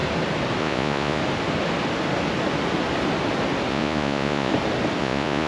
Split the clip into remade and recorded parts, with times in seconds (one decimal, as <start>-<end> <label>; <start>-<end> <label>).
0.0-0.6 recorded; 0.6-1.2 remade; 1.2-3.7 recorded; 3.7-4.5 remade; 4.5-5.0 recorded; 5.0-5.5 remade